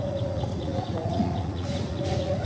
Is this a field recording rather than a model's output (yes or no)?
no